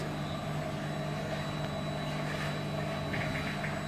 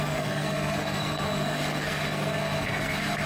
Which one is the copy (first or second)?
second